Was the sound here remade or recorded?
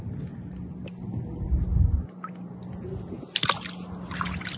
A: recorded